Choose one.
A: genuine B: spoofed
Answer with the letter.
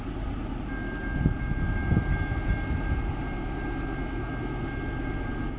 A